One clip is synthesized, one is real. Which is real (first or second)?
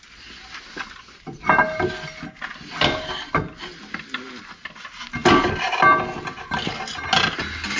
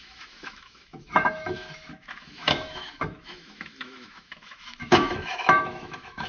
first